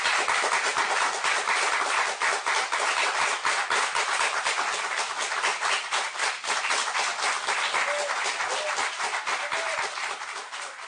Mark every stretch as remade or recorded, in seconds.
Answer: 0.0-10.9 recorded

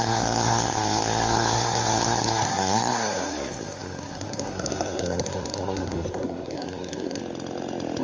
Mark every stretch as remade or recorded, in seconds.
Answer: 0.0-7.2 remade; 7.2-8.0 recorded

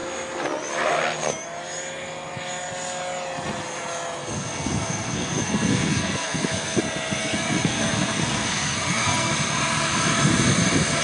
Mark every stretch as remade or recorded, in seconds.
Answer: 0.0-4.2 recorded; 4.2-6.8 remade; 6.8-7.2 recorded; 7.2-9.3 remade; 9.3-11.0 recorded

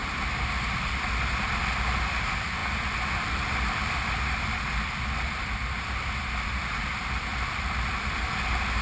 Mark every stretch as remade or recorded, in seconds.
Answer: 0.0-7.3 recorded; 7.3-8.3 remade; 8.3-8.8 recorded

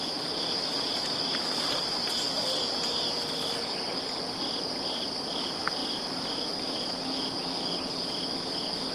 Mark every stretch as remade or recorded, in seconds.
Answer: 0.0-8.9 recorded

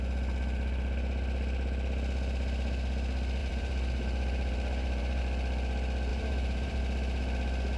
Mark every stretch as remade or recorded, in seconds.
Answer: 0.0-3.4 recorded; 3.4-5.2 remade; 5.2-6.1 recorded; 6.1-6.8 remade; 6.8-7.8 recorded